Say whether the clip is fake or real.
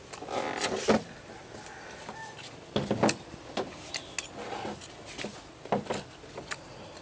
real